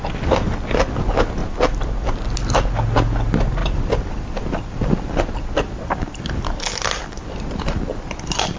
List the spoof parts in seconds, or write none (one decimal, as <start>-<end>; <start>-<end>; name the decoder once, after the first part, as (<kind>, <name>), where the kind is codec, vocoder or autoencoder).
1.4-2.1 (vocoder, BigVGAN v2); 3.6-8.6